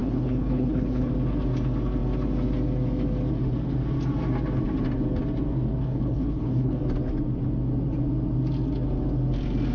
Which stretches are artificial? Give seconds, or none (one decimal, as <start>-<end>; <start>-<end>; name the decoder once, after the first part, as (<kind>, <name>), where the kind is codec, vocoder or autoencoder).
0.0-1.1 (codec, HILCodec); 5.8-6.8